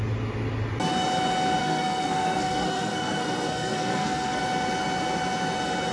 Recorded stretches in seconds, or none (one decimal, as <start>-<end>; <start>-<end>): 0.0-1.6; 4.4-5.9